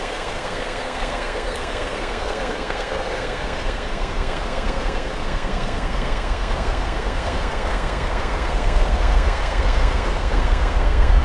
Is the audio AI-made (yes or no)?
yes